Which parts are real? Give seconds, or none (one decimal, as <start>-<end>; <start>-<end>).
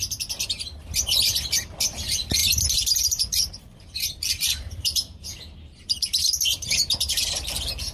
0.0-2.4; 7.1-7.9